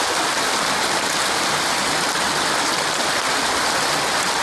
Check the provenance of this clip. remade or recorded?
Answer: recorded